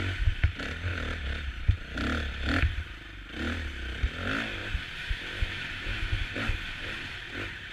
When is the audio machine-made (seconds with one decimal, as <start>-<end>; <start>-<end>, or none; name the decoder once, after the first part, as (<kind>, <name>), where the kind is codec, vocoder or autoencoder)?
0.9-1.6 (vocoder, BigVGAN v2); 4.6-7.7